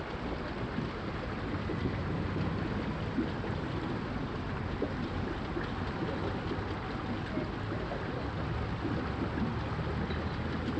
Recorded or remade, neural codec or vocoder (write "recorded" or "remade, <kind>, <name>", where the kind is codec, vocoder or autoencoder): recorded